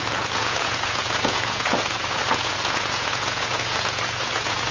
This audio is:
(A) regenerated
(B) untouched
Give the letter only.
A